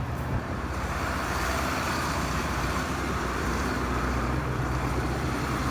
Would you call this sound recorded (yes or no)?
no